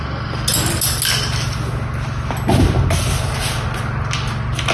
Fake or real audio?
real